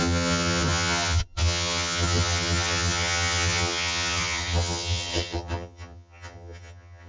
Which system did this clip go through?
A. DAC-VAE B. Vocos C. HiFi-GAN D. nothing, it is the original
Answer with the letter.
C